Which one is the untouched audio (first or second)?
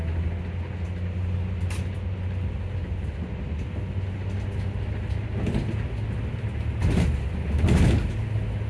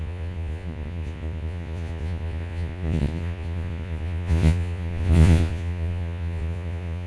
first